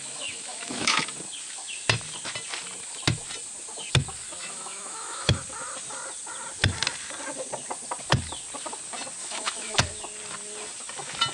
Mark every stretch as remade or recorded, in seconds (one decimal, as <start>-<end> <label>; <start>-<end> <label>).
0.0-1.0 remade; 1.0-4.4 recorded; 4.4-5.4 remade; 5.4-9.2 recorded; 9.2-9.8 remade; 9.8-11.3 recorded